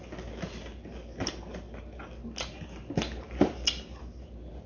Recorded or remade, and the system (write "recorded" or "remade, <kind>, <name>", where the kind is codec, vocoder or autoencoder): recorded